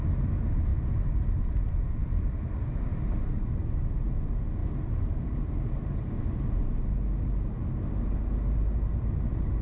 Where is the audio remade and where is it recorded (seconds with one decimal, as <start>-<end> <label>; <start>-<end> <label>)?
0.0-2.0 recorded; 2.0-2.7 remade; 2.7-9.6 recorded